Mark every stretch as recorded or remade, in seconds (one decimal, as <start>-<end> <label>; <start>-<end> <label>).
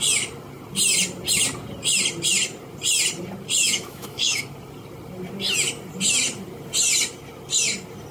0.0-3.6 recorded; 3.6-4.4 remade; 4.4-8.1 recorded